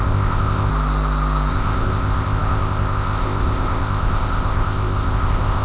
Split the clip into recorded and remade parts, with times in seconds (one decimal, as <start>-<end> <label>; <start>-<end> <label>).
0.0-0.7 remade; 0.7-1.5 recorded; 1.5-5.6 remade